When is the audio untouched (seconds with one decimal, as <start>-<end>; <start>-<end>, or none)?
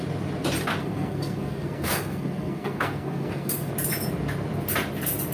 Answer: 0.0-0.8; 3.7-5.3